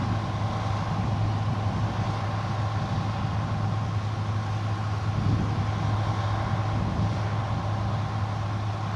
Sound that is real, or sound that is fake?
real